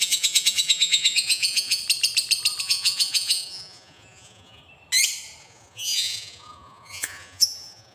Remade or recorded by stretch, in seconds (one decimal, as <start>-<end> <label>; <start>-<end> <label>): 0.0-1.8 remade; 1.8-2.6 recorded; 2.6-4.6 remade; 4.6-5.4 recorded; 5.4-7.9 remade